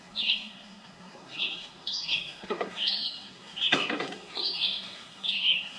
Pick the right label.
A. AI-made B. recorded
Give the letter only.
A